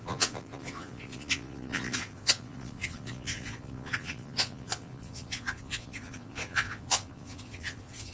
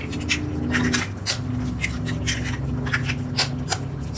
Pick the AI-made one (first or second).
first